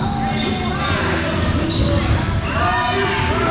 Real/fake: real